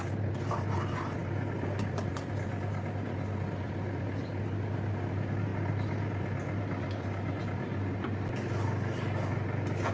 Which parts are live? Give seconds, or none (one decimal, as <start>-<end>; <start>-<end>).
0.0-9.9